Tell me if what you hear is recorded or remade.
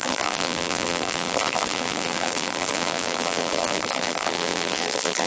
remade